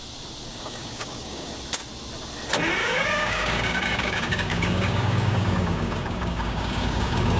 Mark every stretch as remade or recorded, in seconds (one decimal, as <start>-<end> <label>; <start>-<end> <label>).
0.0-0.5 recorded; 0.5-1.5 remade; 1.5-2.8 recorded; 2.8-7.4 remade